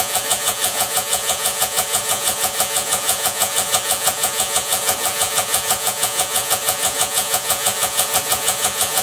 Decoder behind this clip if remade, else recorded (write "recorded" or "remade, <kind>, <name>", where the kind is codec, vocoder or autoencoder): remade, vocoder, Vocos